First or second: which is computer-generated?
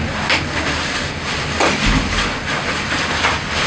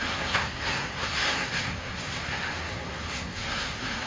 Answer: second